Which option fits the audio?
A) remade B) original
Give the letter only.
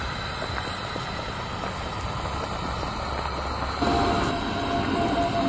B